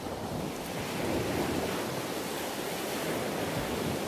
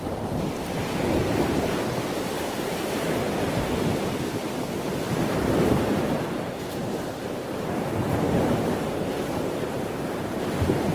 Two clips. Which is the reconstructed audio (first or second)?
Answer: second